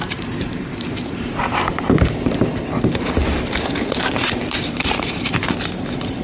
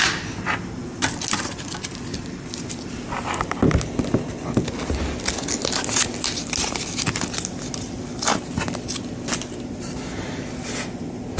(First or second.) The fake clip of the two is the first